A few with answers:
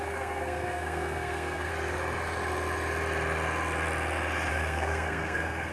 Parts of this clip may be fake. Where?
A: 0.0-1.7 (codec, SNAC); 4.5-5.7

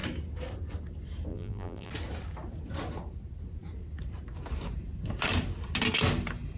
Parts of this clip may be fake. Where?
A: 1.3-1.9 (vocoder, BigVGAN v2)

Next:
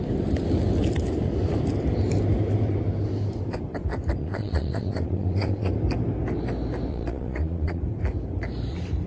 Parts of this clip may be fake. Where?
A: 4.2-5.7 (vocoder, WaveNeXt); 6.9-7.8

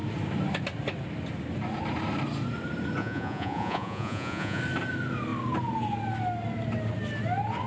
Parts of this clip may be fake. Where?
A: 3.0-4.6 (vocoder, Vocos)

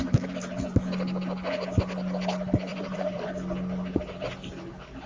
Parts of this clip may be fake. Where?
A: 2.7-3.3 (vocoder, Vocos)

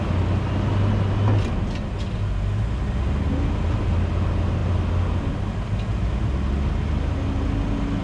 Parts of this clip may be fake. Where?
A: none